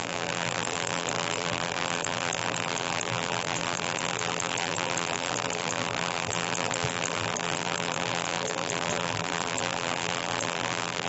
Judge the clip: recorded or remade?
remade